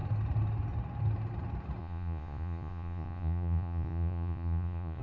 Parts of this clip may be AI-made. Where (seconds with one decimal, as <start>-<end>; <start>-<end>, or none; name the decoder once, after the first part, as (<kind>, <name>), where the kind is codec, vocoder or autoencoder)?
1.8-5.0 (vocoder, Vocos)